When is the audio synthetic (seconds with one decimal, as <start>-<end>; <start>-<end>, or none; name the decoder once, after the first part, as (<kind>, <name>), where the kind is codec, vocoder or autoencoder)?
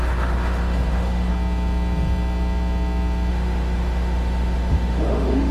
0.0-1.3 (autoencoder, DAC-VAE); 3.3-5.5